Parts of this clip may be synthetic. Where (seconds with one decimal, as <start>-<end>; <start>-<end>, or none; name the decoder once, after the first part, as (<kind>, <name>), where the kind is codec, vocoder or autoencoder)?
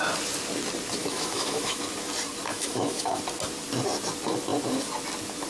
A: 1.0-1.8 (autoencoder, DAC-VAE); 2.5-3.2